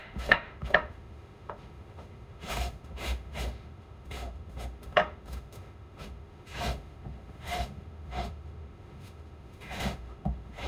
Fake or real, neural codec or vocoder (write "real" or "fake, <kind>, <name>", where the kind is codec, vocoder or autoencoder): fake, autoencoder, DAC-VAE